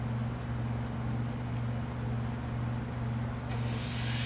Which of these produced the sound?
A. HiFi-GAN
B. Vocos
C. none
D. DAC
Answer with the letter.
C